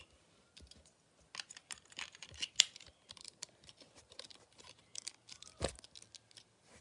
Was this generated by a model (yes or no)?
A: no